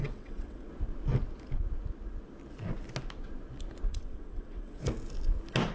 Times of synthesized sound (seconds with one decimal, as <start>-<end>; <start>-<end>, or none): 0.0-0.7; 3.9-4.8